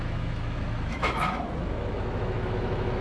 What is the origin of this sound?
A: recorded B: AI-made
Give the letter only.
B